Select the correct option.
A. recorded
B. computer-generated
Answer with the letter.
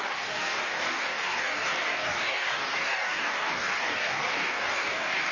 B